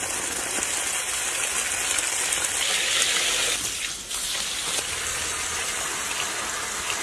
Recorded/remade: recorded